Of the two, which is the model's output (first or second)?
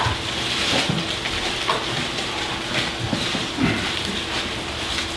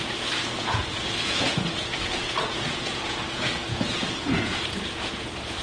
second